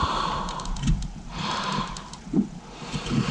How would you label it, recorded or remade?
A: remade